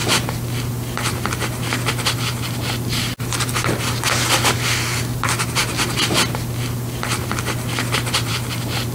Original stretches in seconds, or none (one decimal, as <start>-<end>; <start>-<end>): none